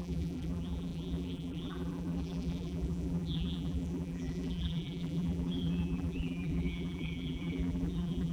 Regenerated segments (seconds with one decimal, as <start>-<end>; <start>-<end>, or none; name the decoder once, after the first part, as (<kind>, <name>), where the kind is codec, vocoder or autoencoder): 0.0-8.3 (vocoder, BigVGAN v2)